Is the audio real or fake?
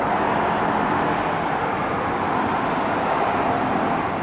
real